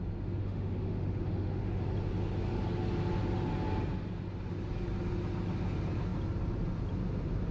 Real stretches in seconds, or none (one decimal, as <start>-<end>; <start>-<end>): 0.0-0.4; 1.8-7.5